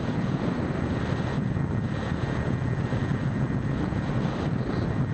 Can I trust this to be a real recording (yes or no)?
yes